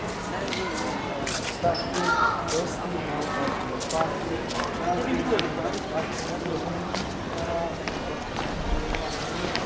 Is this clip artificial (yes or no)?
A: no